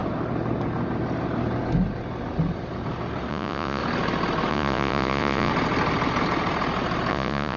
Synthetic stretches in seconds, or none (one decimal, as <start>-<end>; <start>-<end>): 3.3-3.8; 4.5-5.5; 7.1-7.6